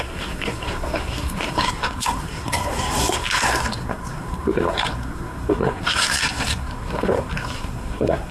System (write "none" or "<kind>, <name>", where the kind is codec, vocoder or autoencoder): codec, SNAC